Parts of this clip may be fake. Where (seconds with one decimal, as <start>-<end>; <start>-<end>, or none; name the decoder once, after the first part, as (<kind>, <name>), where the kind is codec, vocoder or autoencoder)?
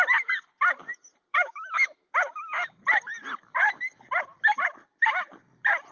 1.3-2.8 (autoencoder, DAC-VAE)